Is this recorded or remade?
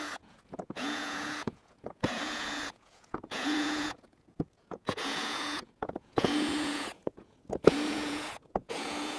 remade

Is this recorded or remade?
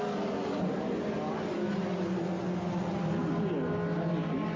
recorded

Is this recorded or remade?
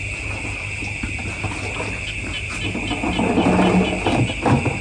recorded